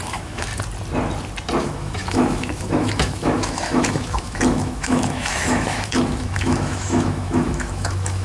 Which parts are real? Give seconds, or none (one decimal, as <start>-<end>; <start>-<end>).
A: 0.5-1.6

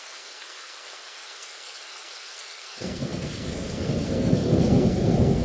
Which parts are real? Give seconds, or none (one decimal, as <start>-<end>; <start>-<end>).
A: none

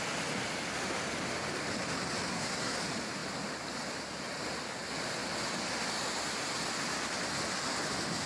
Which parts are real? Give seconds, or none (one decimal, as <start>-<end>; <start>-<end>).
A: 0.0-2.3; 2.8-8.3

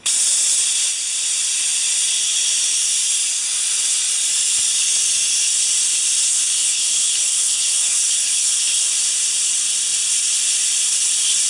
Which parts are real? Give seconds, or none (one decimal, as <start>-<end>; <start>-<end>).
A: 0.0-6.3; 8.9-11.5

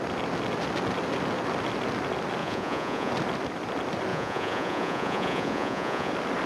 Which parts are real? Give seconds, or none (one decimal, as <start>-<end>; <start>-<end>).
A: 0.0-2.4; 3.1-4.1; 6.1-6.5

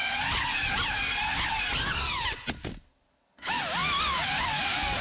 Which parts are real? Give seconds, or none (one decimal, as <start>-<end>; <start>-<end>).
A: 0.0-5.0